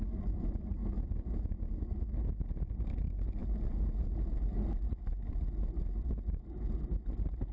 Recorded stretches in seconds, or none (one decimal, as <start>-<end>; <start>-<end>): 0.0-7.5